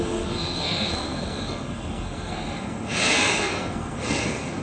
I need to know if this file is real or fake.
fake